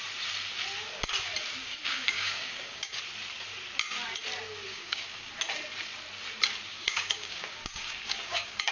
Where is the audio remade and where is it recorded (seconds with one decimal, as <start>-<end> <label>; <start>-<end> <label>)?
0.0-1.6 recorded; 1.6-3.0 remade; 3.0-4.7 recorded; 4.7-5.3 remade; 5.3-6.7 recorded; 6.7-8.7 remade